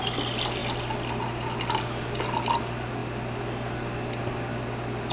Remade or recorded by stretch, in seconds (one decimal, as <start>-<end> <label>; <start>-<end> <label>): 0.0-5.1 recorded